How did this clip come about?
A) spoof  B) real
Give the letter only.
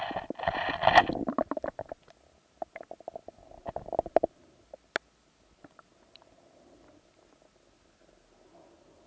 B